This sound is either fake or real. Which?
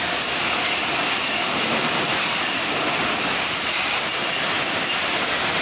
real